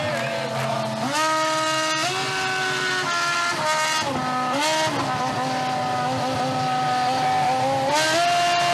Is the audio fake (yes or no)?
no